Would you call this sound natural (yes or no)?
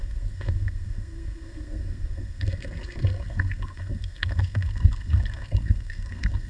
no